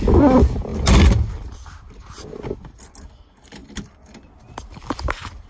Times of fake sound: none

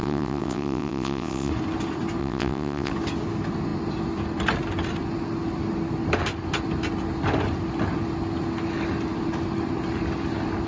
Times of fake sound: 0.0-1.5 (vocoder, WaveNeXt); 2.2-2.9

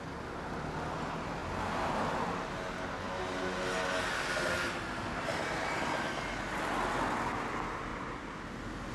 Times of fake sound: none

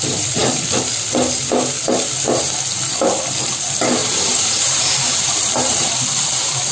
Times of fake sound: 4.0-5.9 (vocoder, BigVGAN v2)

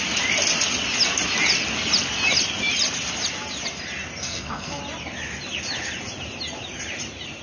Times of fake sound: 4.2-4.8 (codec, SNAC)

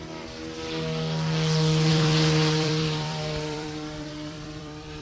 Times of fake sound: 1.9-5.0 (vocoder, BigVGAN v2)